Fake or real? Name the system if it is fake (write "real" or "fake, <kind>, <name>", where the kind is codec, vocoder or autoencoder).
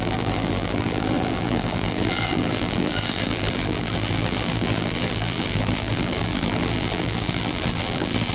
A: fake, vocoder, BigVGAN v2